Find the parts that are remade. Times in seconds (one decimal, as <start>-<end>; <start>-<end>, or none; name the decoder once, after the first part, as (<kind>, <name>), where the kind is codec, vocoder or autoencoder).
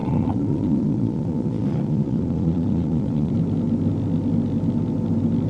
0.0-3.3 (vocoder, Vocos)